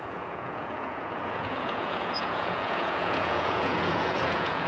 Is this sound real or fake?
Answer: fake